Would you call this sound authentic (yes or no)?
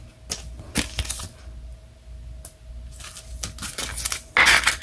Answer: yes